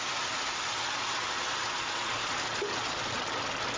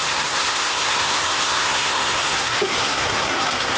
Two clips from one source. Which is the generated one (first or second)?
second